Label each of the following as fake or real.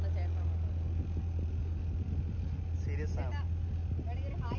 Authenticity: real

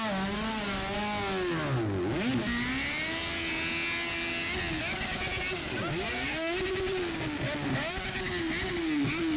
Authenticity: real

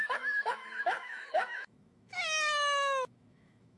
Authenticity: fake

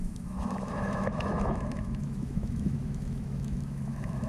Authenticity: fake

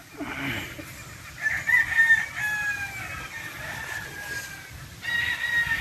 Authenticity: real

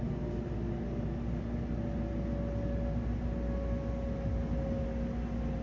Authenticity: real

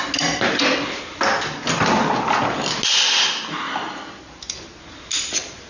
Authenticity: real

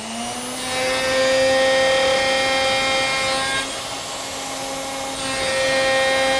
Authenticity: real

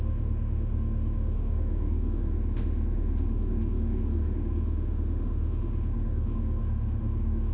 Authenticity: fake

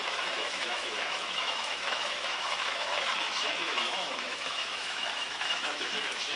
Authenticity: fake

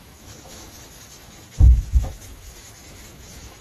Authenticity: fake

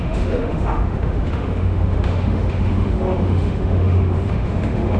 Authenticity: fake